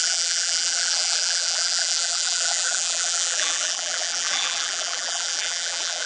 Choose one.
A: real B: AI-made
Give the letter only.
B